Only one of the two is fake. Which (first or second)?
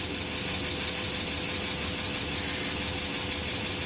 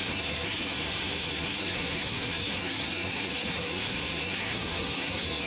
second